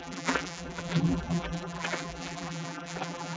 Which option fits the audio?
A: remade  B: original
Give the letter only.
A